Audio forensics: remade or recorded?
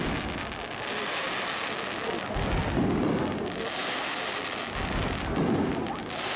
recorded